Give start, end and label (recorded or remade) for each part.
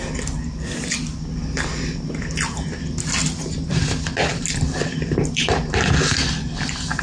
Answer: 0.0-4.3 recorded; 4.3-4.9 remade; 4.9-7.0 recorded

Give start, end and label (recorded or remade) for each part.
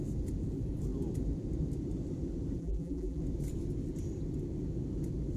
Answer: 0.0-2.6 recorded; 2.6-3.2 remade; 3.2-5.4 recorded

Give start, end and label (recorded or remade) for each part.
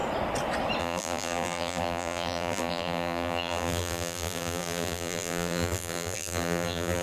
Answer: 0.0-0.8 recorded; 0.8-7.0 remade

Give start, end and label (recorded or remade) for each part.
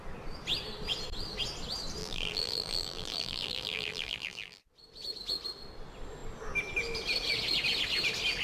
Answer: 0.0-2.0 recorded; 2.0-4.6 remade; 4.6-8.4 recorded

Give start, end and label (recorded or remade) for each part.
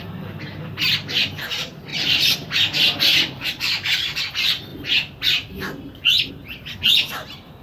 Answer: 0.0-1.9 recorded; 1.9-4.2 remade; 4.2-7.6 recorded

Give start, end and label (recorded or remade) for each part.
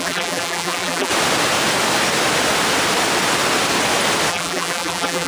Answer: 0.0-1.1 remade; 1.1-4.3 recorded; 4.3-5.3 remade